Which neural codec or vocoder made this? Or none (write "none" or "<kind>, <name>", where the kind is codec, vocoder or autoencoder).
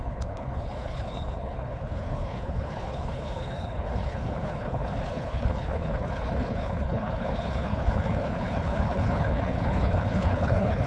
codec, HILCodec